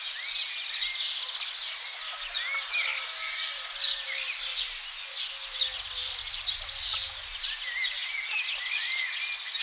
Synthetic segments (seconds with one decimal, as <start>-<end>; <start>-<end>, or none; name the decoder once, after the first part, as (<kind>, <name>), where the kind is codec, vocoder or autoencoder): 6.0-7.1 (vocoder, BigVGAN v2)